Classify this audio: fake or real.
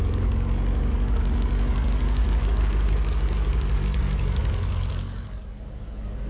fake